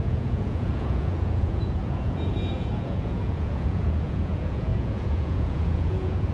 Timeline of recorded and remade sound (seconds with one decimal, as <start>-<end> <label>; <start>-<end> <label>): 0.0-6.3 remade